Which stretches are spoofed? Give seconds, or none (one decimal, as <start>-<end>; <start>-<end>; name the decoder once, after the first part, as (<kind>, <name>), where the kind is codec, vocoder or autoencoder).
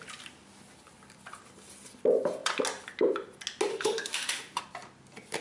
3.7-4.6 (autoencoder, DAC-VAE)